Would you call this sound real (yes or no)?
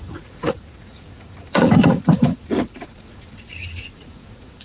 no